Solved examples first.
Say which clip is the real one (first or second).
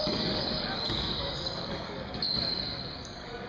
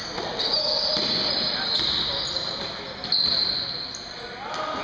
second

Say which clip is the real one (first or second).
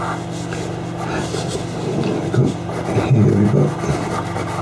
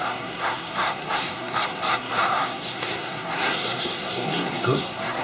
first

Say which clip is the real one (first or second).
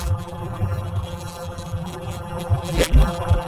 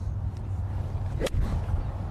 second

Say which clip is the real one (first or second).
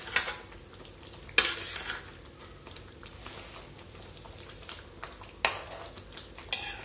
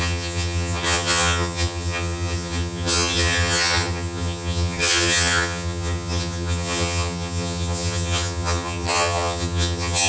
first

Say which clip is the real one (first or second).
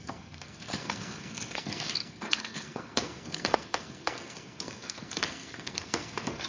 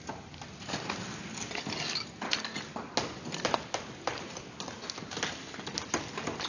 second